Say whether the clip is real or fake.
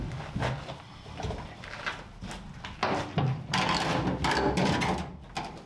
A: real